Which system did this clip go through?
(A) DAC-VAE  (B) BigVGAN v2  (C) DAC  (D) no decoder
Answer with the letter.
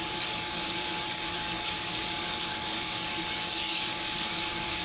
C